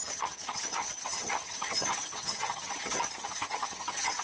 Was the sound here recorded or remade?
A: remade